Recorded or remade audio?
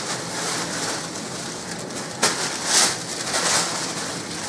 recorded